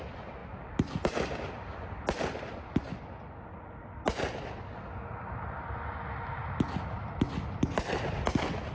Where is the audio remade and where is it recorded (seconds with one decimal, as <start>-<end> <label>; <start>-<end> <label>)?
0.0-8.7 recorded